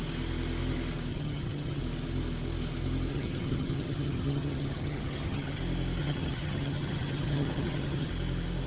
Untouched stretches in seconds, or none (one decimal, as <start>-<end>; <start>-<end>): 0.0-1.1; 1.8-3.1; 5.6-6.0; 8.1-8.7